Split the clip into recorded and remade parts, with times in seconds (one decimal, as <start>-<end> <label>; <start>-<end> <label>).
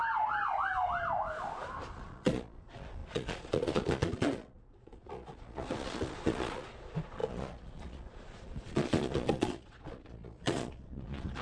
0.0-1.9 recorded; 1.9-11.4 remade